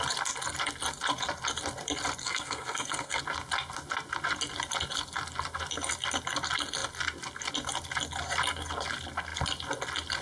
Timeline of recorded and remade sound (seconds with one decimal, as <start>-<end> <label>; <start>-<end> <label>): 0.0-2.2 recorded; 2.2-3.2 remade; 3.2-10.2 recorded

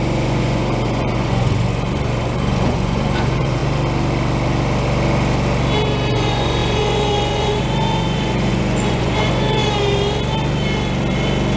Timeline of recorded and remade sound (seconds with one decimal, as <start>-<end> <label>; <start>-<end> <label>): 0.0-3.6 remade; 3.6-6.1 recorded; 6.1-9.6 remade; 9.6-11.6 recorded

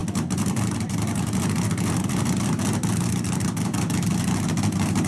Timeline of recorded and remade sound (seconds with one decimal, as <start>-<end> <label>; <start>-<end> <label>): 0.0-5.1 recorded